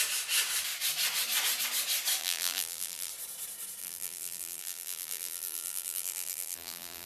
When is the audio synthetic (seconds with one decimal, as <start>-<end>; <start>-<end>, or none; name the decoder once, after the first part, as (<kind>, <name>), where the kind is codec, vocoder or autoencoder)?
2.2-3.1 (vocoder, BigVGAN v2); 3.8-7.1